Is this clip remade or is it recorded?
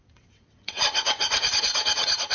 remade